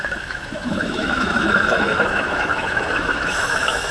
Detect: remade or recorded remade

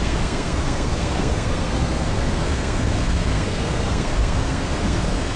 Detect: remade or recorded remade